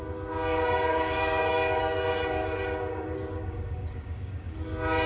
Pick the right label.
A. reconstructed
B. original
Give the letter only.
A